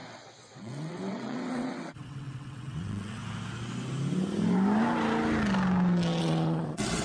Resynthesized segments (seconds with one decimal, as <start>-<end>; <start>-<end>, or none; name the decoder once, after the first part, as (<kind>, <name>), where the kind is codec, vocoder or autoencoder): 0.0-3.2 (vocoder, WaveNeXt); 6.2-7.0